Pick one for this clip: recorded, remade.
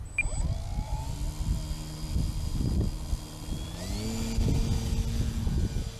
recorded